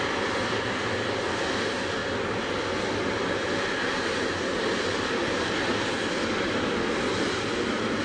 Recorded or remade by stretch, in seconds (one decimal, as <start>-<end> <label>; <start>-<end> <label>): 0.0-8.0 recorded